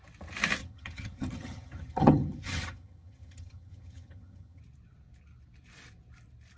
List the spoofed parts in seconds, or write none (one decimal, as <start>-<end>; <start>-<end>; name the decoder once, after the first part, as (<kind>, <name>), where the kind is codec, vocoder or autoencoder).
0.6-4.6 (vocoder, HiFi-GAN)